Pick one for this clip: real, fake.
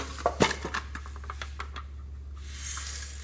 real